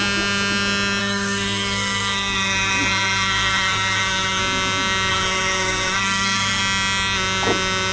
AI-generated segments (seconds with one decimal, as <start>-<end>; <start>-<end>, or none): 1.0-4.4; 5.1-6.6